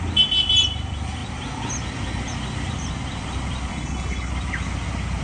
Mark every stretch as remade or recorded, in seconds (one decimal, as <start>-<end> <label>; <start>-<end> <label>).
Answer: 0.0-3.7 recorded; 3.7-4.3 remade; 4.3-5.2 recorded